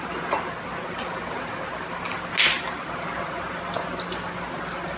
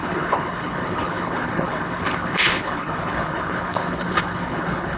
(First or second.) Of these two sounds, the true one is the first